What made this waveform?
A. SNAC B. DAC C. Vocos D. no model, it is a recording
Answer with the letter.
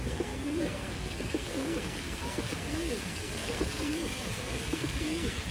A